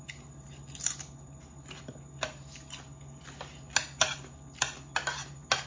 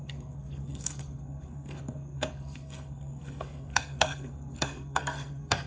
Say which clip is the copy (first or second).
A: second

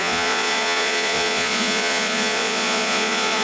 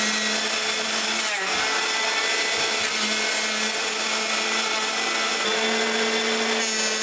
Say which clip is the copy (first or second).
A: first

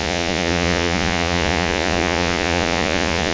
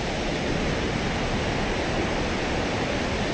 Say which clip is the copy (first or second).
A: first